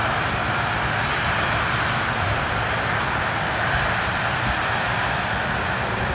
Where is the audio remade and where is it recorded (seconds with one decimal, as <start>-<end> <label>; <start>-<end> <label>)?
0.0-6.1 recorded